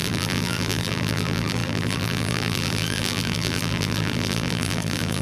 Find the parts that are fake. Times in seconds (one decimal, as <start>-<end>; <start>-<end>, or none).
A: 0.0-5.2